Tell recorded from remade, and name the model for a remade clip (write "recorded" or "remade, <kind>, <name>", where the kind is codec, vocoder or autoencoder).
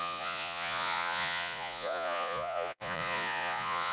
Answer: remade, vocoder, Vocos